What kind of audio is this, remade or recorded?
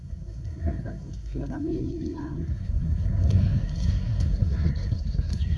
remade